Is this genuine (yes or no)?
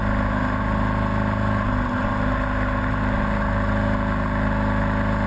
yes